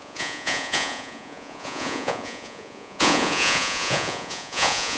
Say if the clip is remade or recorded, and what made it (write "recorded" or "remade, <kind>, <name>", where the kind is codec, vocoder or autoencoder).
remade, vocoder, Vocos